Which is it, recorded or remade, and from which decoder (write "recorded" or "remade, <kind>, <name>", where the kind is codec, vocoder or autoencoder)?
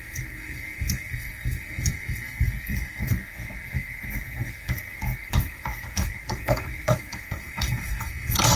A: remade, codec, SNAC